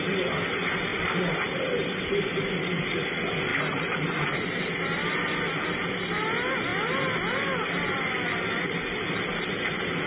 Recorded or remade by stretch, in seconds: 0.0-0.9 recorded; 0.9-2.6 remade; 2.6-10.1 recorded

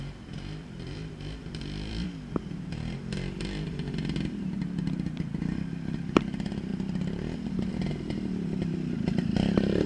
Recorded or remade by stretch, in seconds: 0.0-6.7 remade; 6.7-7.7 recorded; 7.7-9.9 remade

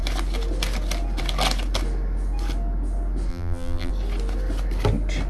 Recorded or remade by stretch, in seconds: 0.0-3.3 recorded; 3.3-3.9 remade; 3.9-5.3 recorded

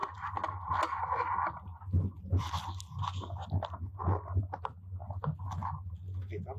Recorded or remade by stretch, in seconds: 0.0-6.6 recorded

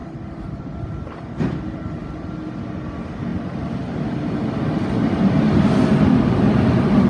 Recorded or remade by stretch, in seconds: 0.0-3.3 recorded; 3.3-5.1 remade; 5.1-7.1 recorded

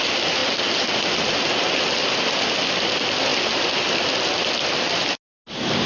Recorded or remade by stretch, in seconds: 0.0-0.4 remade; 0.4-1.8 recorded; 1.8-3.3 remade; 3.3-5.5 recorded; 5.5-5.9 remade

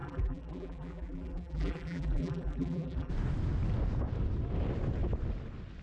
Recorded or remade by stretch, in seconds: 0.0-3.1 remade; 3.1-5.8 recorded